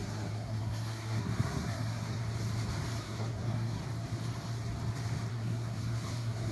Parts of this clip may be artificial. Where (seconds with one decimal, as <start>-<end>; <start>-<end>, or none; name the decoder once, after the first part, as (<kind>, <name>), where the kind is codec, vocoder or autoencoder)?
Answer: 0.0-2.2 (codec, SNAC); 3.0-3.8; 5.3-6.5